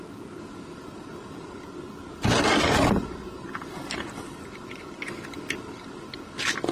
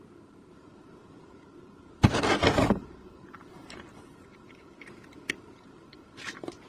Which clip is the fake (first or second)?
second